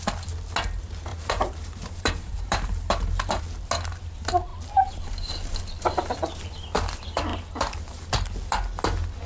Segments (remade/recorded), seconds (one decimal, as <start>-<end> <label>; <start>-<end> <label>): 0.0-1.1 recorded; 1.1-3.4 remade; 3.4-7.3 recorded; 7.3-8.1 remade; 8.1-9.3 recorded